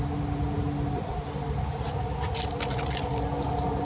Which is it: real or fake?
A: real